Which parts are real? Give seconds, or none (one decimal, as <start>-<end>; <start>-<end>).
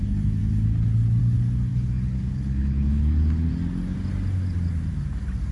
0.0-1.7; 3.5-5.5